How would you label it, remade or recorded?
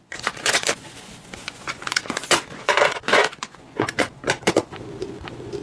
remade